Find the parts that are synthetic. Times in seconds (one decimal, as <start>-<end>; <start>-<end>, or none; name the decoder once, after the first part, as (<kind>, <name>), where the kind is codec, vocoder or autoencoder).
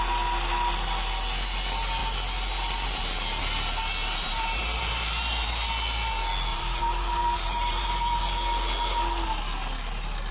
4.0-5.5 (vocoder, BigVGAN v2); 6.5-8.2